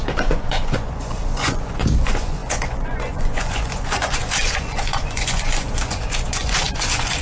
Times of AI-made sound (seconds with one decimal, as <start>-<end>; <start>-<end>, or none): 0.0-7.2